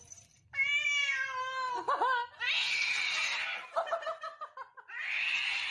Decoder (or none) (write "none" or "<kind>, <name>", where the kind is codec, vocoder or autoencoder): none